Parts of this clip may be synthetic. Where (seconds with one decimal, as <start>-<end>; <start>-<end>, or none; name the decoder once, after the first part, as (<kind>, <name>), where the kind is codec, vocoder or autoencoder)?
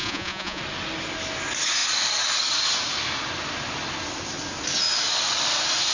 0.0-0.6 (vocoder, Vocos)